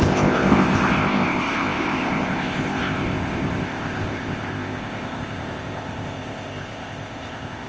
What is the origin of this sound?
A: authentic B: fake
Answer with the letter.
B